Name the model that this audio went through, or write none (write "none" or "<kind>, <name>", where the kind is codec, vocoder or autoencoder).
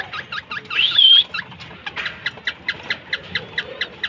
none